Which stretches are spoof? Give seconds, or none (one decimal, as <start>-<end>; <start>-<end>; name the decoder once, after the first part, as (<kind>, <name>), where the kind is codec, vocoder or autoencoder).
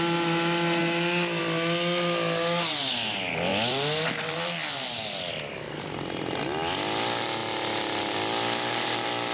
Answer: 3.5-5.7 (vocoder, BigVGAN v2)